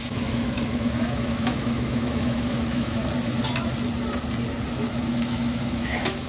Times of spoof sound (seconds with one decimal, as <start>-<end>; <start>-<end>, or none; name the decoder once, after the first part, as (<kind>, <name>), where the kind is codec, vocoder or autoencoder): 0.0-3.0 (autoencoder, DAC-VAE); 4.8-6.3